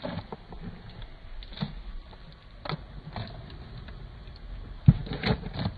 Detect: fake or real real